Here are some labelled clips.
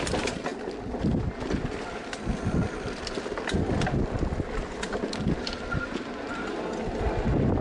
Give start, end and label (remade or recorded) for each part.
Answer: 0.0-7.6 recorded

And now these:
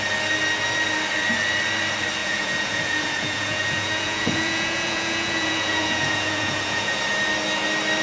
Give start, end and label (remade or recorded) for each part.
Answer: 0.0-2.2 recorded; 2.2-7.0 remade; 7.0-8.0 recorded

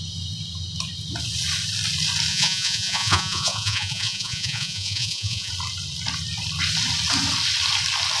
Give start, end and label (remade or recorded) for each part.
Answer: 0.0-2.3 recorded; 2.3-5.5 remade; 5.5-8.2 recorded

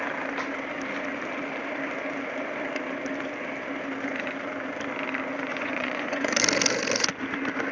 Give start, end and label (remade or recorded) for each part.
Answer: 0.0-5.5 recorded; 5.5-6.4 remade; 6.4-7.7 recorded

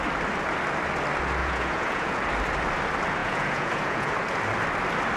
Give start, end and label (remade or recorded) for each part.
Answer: 0.0-1.4 recorded; 1.4-2.2 remade; 2.2-3.2 recorded; 3.2-4.1 remade; 4.1-5.2 recorded

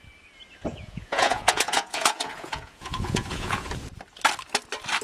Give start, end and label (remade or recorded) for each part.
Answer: 0.0-0.7 recorded; 0.7-3.7 remade; 3.7-5.0 recorded

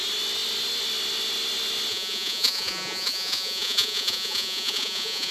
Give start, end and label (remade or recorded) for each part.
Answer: 0.0-1.9 recorded; 1.9-5.3 remade

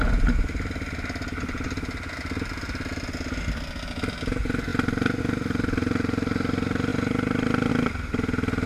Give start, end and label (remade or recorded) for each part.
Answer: 0.0-8.7 recorded